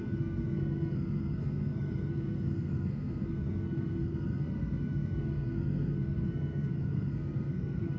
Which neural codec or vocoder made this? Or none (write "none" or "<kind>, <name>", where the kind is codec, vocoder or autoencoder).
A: codec, SNAC